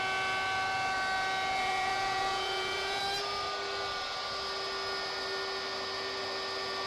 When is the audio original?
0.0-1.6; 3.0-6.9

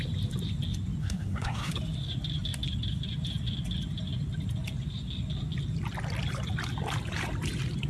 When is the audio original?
0.0-1.0; 1.7-7.9